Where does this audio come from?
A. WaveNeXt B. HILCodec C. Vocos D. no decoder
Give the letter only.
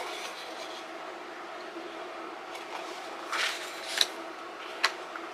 D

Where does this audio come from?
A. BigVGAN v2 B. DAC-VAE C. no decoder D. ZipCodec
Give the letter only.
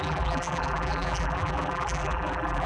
A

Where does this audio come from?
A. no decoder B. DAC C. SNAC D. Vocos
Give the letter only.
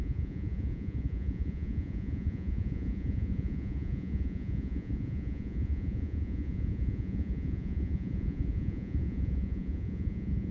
D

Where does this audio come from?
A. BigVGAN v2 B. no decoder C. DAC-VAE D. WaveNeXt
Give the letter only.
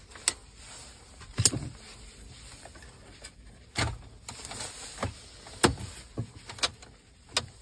B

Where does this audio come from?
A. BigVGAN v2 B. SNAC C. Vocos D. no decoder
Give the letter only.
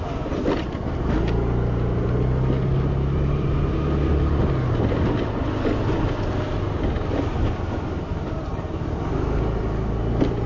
D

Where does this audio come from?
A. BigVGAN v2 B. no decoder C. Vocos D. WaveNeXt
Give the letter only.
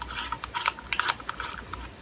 B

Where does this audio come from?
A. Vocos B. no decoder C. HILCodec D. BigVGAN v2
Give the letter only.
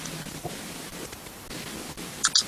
B